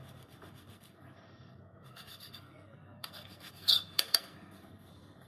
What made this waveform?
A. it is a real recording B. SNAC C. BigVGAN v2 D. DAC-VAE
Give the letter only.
B